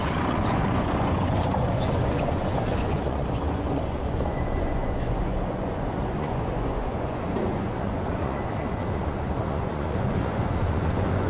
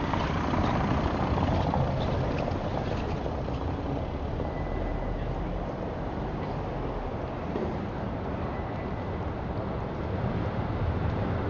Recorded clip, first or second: second